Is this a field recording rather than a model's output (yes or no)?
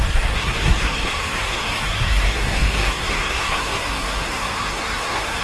no